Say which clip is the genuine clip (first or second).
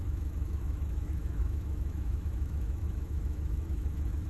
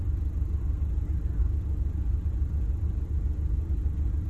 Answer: second